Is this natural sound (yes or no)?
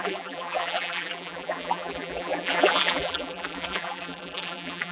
no